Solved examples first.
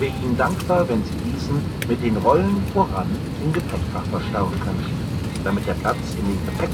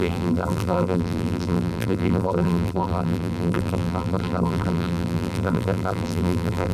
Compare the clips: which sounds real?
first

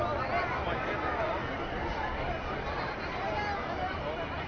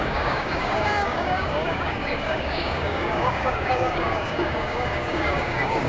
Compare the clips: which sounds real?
first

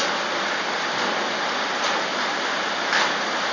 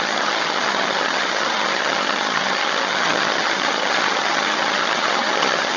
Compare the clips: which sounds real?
first